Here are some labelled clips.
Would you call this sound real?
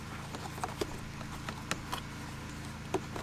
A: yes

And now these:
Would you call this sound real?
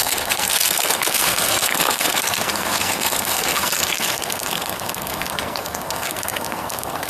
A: no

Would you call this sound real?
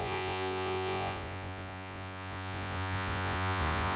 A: no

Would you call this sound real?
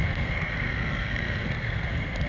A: no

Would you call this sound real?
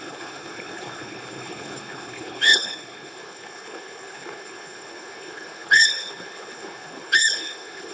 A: no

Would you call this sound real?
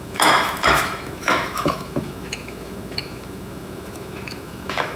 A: no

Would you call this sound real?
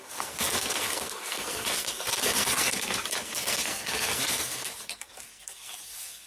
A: no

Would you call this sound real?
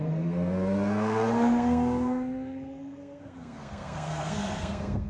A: no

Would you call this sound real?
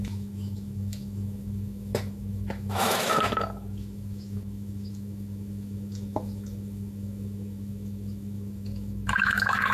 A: no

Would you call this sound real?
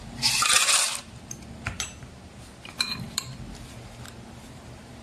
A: no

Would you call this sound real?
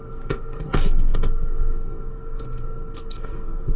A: no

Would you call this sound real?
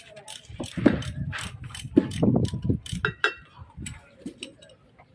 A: yes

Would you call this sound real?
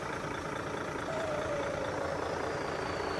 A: no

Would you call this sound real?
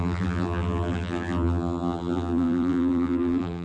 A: no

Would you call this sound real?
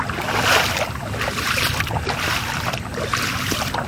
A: yes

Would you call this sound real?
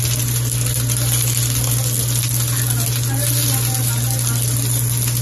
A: yes